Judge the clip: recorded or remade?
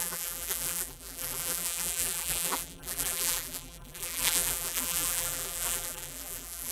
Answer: remade